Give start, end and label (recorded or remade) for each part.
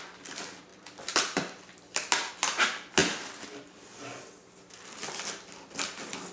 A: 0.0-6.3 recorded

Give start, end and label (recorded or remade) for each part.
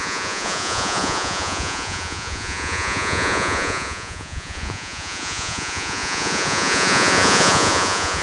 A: 0.0-8.2 remade